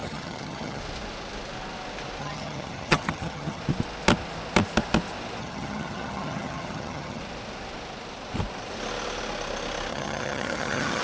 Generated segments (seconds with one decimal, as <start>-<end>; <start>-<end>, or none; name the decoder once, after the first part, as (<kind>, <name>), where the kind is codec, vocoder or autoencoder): 0.0-0.8 (vocoder, HiFi-GAN); 2.2-3.6; 5.4-7.2; 9.9-11.0